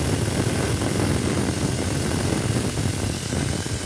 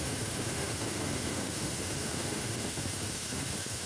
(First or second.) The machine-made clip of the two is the second